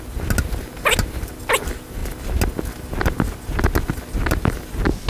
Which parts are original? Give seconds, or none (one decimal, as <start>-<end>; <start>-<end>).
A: 0.0-5.1

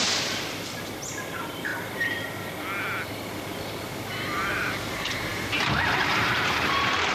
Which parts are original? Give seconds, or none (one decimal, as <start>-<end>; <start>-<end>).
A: 1.7-4.5

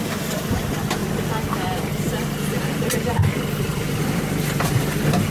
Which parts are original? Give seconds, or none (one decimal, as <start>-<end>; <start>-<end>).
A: 0.0-5.3

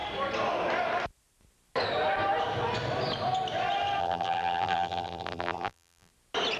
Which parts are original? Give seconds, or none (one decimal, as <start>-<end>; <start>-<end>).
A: 0.0-4.0; 6.1-6.6

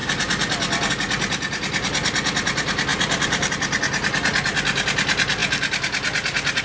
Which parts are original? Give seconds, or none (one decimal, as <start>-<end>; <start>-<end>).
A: 0.9-2.9; 3.5-6.6

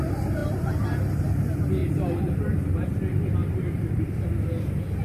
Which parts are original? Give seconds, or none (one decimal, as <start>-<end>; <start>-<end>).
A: 0.0-0.4; 1.2-1.8; 3.0-3.4; 4.0-5.0

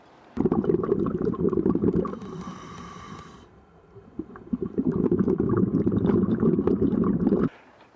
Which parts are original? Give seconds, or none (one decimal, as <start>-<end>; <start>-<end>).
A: 0.0-2.2; 6.0-8.0

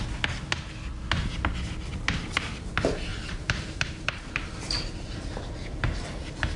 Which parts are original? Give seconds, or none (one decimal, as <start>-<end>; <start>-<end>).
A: 0.0-3.1; 6.0-6.6